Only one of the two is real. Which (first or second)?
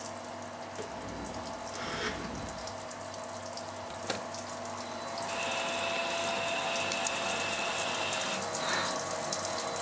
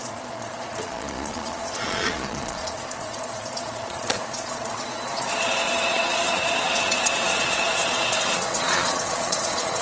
first